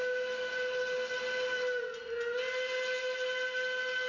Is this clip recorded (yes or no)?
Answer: yes